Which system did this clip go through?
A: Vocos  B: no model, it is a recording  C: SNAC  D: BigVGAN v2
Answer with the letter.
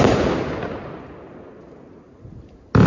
B